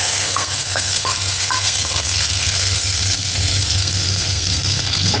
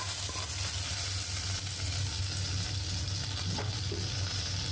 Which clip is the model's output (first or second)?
first